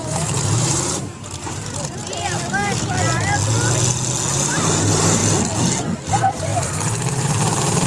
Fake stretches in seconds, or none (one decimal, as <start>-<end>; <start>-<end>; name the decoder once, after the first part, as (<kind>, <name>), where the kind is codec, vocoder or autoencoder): 0.0-2.0 (vocoder, BigVGAN v2); 4.3-5.2; 6.1-7.9